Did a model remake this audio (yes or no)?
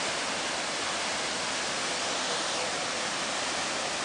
no